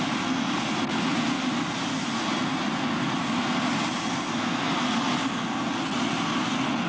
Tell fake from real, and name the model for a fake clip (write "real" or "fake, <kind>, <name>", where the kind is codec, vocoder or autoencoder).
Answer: real